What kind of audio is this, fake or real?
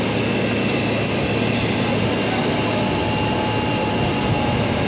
real